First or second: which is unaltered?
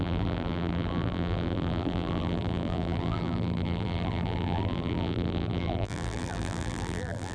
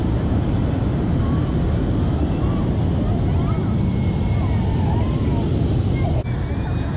second